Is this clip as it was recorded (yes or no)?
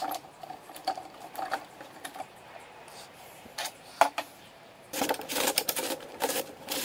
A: no